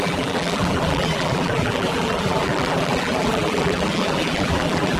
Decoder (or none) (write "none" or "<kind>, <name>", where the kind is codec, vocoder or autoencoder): vocoder, BigVGAN v2